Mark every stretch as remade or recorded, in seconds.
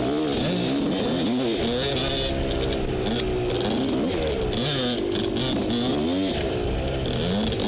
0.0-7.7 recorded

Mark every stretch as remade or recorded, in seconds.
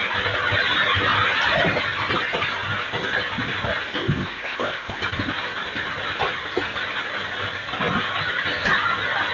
0.0-4.0 recorded; 4.0-5.0 remade; 5.0-9.3 recorded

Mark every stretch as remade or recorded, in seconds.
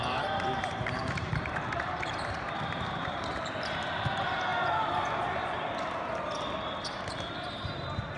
0.0-4.5 remade; 4.5-8.2 recorded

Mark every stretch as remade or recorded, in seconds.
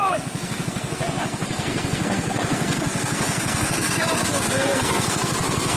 0.0-5.8 remade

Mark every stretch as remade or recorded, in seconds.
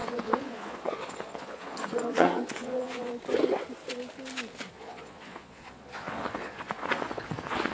0.0-3.1 remade; 3.1-4.7 recorded; 4.7-7.7 remade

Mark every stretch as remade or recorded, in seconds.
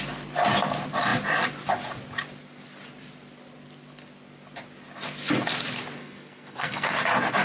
0.0-6.0 recorded; 6.0-6.9 remade; 6.9-7.4 recorded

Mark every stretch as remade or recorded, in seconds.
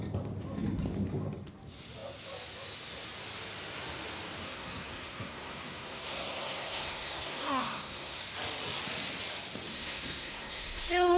0.0-4.4 recorded; 4.4-8.2 remade; 8.2-9.7 recorded; 9.7-11.2 remade